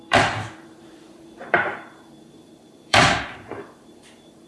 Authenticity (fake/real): fake